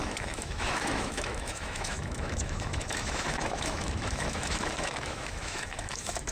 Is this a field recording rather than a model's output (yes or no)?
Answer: no